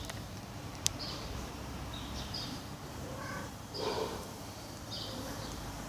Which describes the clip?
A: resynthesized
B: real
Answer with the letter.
A